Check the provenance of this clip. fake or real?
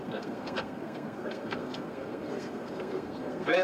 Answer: fake